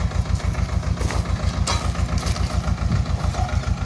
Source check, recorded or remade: recorded